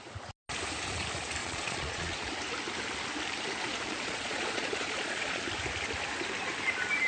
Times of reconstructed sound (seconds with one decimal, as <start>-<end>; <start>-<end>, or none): 1.4-2.3; 3.7-5.4